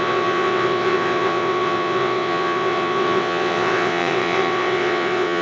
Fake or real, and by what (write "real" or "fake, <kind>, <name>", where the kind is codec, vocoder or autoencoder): fake, vocoder, WaveNeXt